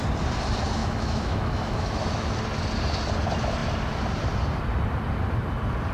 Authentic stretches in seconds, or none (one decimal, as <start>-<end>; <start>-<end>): 0.0-0.8; 2.4-5.9

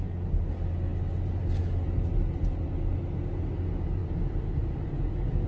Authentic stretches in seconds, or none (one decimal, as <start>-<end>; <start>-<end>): 0.0-4.0; 4.9-5.5

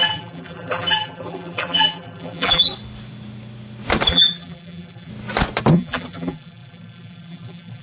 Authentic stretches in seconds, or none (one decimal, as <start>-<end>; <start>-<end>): 2.7-4.1; 5.1-5.7

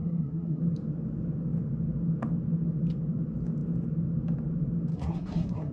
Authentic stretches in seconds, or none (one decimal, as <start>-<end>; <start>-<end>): 0.6-4.9

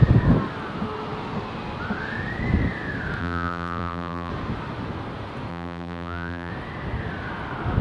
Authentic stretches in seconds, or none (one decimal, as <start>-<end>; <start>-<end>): 0.0-3.2; 4.3-5.5; 6.5-7.8